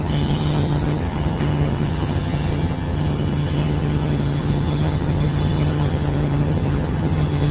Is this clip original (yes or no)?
no